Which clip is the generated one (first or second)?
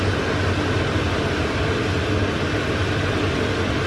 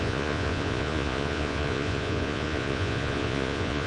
second